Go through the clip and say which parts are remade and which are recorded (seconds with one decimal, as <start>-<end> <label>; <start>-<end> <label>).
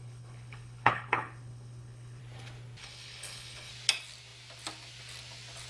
0.0-2.2 remade; 2.2-2.8 recorded; 2.8-3.7 remade; 3.7-5.7 recorded